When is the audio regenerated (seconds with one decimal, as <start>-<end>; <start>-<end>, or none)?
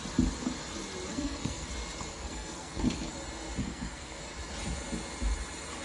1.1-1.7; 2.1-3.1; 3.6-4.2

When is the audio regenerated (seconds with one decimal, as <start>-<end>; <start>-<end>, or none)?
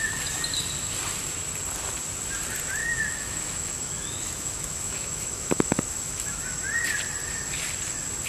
2.8-6.4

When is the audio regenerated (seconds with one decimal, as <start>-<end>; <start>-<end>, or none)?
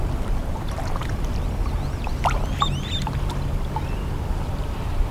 0.4-1.1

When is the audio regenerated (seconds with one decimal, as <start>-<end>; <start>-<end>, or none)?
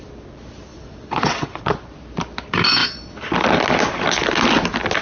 0.7-1.6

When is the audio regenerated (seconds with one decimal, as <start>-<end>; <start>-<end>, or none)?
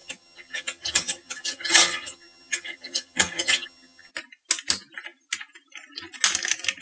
0.0-4.1